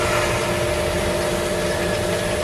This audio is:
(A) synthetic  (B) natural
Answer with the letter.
B